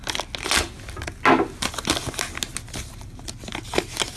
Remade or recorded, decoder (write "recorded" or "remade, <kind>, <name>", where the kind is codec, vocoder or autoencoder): recorded